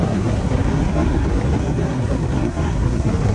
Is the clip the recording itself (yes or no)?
no